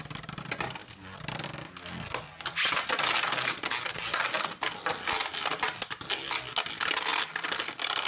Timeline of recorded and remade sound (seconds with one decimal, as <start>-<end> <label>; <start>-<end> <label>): 0.0-5.2 recorded; 5.2-5.8 remade; 5.8-8.1 recorded